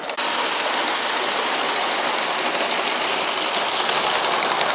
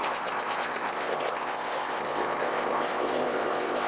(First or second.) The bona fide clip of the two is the first